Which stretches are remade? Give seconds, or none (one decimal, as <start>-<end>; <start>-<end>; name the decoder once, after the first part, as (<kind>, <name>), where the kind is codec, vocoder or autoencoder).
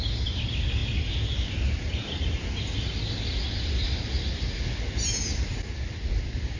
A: none